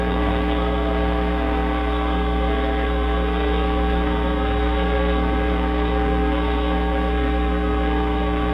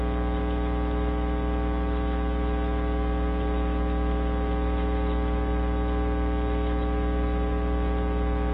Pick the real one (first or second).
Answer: second